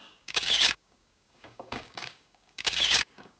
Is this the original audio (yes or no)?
no